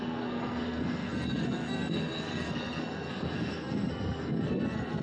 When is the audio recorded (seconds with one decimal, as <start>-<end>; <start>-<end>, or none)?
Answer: none